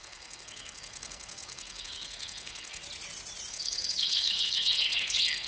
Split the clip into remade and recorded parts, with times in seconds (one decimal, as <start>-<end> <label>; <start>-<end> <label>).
0.0-2.8 remade; 2.8-3.5 recorded; 3.5-5.5 remade